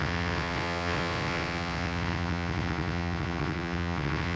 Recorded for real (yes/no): no